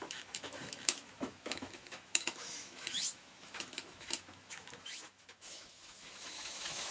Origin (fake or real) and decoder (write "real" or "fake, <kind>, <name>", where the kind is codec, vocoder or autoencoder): fake, autoencoder, DAC-VAE